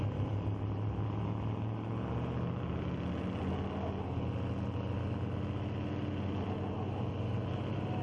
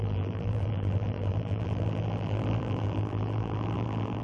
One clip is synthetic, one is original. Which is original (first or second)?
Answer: first